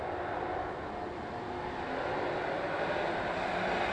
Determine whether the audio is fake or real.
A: real